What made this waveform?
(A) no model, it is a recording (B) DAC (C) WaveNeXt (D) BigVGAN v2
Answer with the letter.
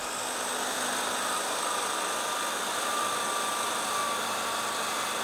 A